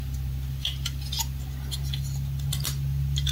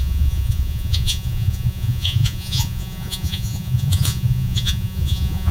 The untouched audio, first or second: first